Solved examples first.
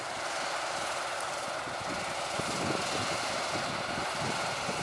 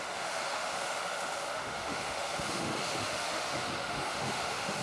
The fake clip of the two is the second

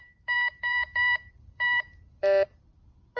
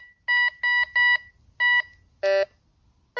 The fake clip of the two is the first